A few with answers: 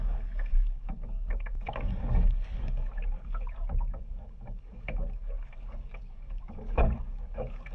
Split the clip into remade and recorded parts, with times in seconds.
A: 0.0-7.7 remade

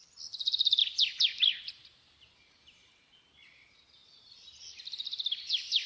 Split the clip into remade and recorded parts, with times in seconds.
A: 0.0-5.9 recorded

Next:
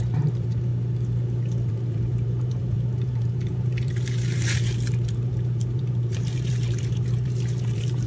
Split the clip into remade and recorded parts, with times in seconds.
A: 0.0-0.7 remade; 0.7-1.7 recorded; 1.7-8.1 remade

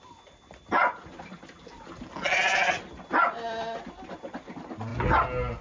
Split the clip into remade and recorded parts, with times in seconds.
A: 0.0-5.6 recorded

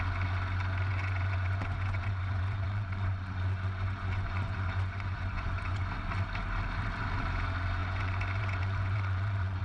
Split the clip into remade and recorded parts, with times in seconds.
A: 0.0-0.9 recorded; 0.9-5.9 remade; 5.9-7.8 recorded; 7.8-9.6 remade

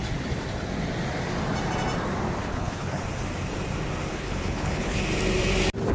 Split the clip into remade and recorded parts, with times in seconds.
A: 0.0-2.4 recorded; 2.4-3.0 remade; 3.0-4.1 recorded; 4.1-5.0 remade; 5.0-5.9 recorded